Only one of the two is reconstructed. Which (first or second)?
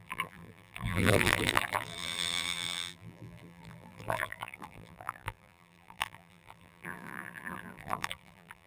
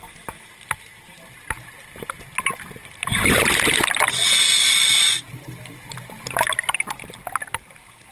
first